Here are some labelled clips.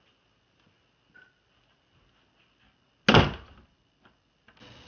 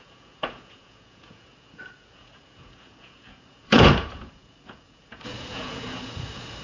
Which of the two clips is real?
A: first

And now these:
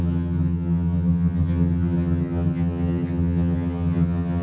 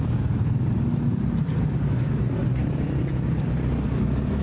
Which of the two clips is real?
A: second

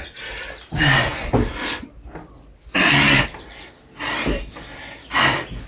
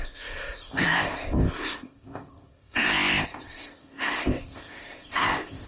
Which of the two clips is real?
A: first